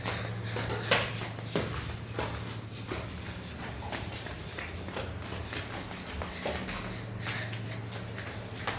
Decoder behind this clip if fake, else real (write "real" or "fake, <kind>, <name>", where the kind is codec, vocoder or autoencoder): real